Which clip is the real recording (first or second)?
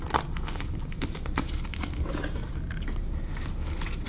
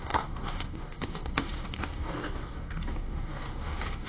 first